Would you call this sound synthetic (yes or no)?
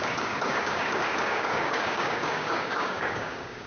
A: yes